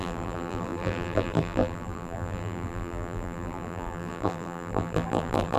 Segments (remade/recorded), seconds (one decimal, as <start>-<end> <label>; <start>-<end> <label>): 0.0-5.6 remade